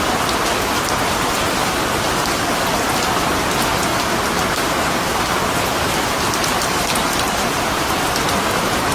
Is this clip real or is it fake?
real